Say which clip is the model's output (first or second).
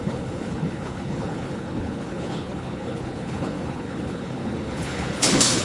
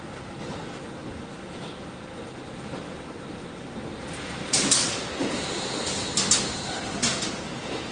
first